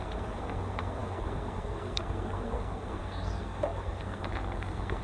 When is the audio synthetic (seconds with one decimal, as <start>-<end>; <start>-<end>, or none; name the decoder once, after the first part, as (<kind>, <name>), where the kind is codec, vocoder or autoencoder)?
0.0-5.0 (codec, SNAC)